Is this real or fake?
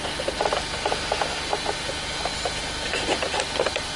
real